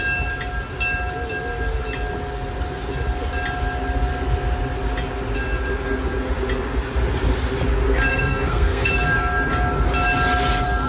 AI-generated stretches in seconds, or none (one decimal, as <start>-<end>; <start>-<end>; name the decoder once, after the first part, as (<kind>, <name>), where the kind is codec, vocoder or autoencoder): 8.1-8.9 (codec, SNAC)